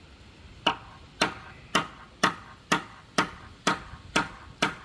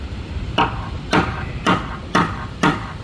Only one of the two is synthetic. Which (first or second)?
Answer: second